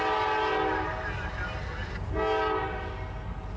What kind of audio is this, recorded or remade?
recorded